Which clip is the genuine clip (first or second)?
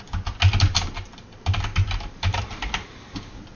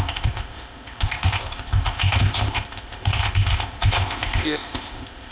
first